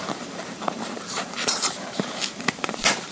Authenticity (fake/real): fake